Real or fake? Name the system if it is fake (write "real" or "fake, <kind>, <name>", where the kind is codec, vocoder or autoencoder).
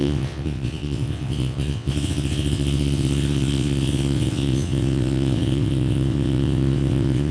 fake, vocoder, WaveNeXt